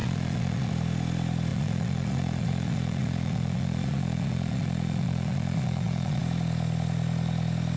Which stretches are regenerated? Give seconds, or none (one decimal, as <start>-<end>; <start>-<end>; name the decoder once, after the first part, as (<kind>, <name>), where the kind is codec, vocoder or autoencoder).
0.0-0.7 (vocoder, Vocos); 1.5-6.2